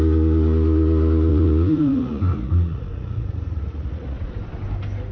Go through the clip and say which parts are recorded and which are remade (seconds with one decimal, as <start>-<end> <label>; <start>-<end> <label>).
0.0-1.3 recorded; 1.3-4.3 remade; 4.3-5.1 recorded